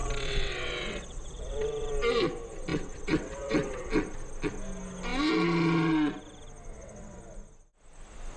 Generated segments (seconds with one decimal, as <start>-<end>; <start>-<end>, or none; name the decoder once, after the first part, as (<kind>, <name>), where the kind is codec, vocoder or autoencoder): 0.0-1.9 (vocoder, WaveNeXt); 2.7-3.9; 6.7-7.2